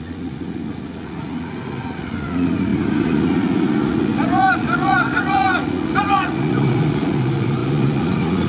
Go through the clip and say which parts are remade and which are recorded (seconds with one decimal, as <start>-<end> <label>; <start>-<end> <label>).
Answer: 0.0-8.5 remade